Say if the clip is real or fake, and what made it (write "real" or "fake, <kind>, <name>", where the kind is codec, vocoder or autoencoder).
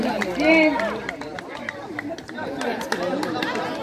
real